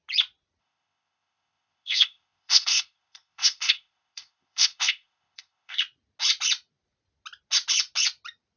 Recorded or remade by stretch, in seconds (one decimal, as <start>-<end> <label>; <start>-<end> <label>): 0.0-0.6 recorded; 0.6-5.8 remade; 5.8-8.6 recorded